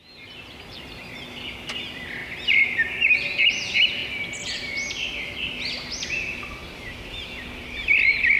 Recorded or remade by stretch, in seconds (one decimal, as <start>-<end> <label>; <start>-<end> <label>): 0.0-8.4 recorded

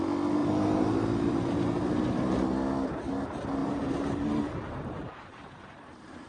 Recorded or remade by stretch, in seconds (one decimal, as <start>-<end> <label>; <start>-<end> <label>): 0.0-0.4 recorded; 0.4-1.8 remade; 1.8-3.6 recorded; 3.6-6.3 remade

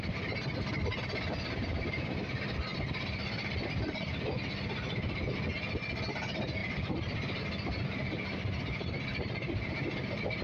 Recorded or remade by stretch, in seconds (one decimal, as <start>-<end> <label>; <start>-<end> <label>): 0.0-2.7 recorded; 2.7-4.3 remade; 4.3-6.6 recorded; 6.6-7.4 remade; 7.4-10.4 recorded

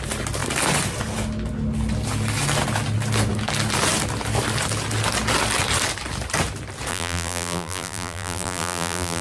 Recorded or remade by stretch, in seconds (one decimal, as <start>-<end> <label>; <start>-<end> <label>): 0.0-6.9 recorded; 6.9-9.2 remade